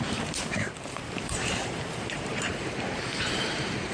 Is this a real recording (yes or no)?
no